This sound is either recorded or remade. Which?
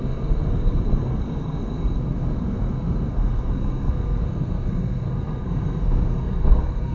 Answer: remade